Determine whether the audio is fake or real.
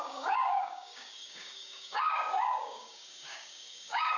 fake